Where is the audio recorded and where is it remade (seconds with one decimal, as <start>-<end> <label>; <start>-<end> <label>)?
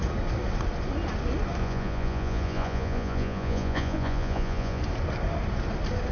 0.0-1.6 recorded; 1.6-4.8 remade; 4.8-6.1 recorded